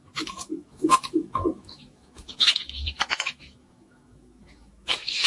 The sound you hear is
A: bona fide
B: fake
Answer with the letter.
B